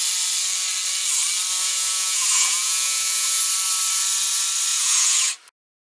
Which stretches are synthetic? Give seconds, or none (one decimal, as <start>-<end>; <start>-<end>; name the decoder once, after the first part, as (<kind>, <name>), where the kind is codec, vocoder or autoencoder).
1.6-3.4 (vocoder, Vocos); 4.7-5.3

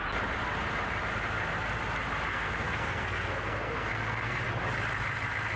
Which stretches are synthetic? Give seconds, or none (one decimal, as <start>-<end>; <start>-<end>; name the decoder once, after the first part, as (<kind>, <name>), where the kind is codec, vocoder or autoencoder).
2.3-4.4 (codec, SNAC)

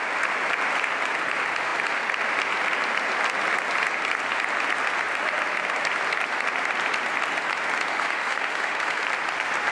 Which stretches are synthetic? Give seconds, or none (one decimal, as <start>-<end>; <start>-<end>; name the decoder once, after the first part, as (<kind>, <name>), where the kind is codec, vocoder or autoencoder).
7.9-9.0 (autoencoder, DAC-VAE)

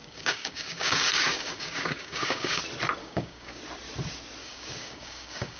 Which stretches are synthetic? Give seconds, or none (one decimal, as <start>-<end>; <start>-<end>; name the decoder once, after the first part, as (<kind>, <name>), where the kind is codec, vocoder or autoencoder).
0.0-2.6 (codec, DAC); 3.0-3.6; 4.4-5.6